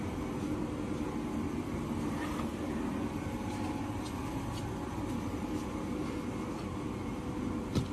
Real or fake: real